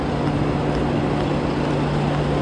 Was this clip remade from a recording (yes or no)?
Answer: no